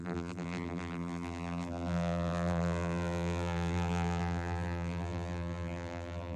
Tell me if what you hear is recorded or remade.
remade